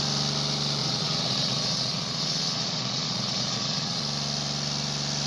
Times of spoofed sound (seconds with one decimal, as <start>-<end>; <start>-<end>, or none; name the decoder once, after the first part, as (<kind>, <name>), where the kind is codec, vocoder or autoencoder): 0.8-4.0 (vocoder, Vocos)